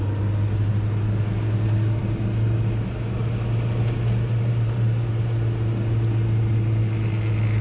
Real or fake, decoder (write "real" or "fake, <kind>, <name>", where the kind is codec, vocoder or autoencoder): real